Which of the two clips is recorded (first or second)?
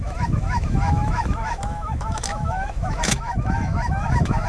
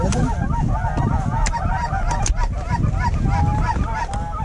second